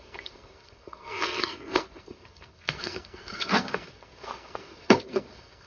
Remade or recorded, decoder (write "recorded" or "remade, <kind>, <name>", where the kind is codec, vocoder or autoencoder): remade, codec, SNAC